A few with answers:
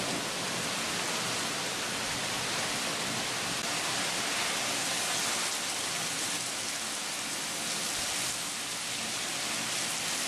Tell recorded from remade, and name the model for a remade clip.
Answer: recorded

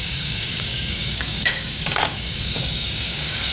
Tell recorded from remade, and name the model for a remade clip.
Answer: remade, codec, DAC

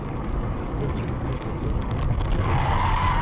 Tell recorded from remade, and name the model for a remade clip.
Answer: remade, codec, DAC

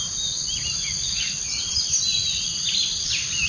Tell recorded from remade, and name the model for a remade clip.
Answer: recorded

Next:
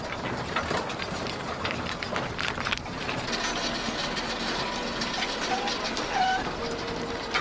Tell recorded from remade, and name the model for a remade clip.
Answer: recorded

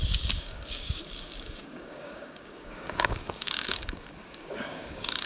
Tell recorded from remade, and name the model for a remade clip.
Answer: remade, codec, DAC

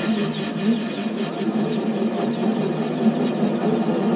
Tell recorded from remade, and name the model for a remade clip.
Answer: recorded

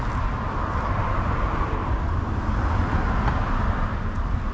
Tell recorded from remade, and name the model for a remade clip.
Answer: recorded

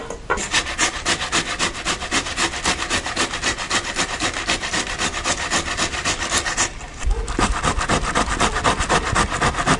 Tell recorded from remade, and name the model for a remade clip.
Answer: recorded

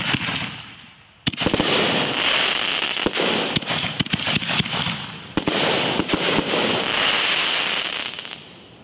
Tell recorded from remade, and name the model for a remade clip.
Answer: recorded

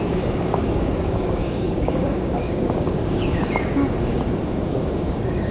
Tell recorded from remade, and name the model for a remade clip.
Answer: remade, codec, DAC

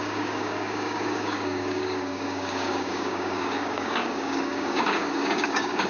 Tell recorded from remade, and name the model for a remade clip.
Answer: remade, codec, DAC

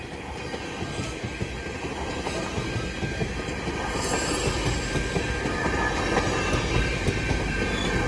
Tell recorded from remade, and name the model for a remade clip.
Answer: recorded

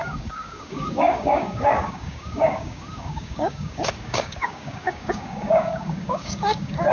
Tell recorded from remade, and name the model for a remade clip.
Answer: remade, codec, DAC